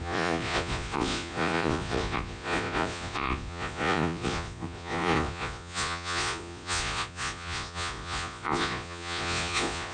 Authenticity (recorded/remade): remade